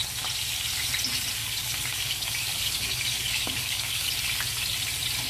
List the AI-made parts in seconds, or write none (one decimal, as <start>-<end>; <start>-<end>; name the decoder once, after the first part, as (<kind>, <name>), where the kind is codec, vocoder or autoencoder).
1.4-4.1 (codec, DAC)